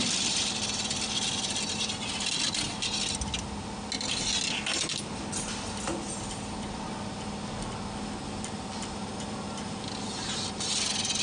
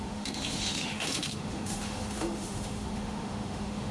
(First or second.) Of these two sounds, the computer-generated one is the second